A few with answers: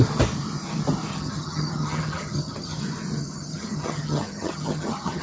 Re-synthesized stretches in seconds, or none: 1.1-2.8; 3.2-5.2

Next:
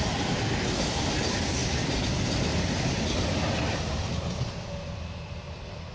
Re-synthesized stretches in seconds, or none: none